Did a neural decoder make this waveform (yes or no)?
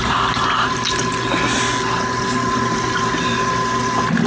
no